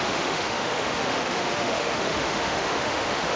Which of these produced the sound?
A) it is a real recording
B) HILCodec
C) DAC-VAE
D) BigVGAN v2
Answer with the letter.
C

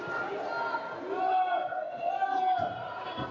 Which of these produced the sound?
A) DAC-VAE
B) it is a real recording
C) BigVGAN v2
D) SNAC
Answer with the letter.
B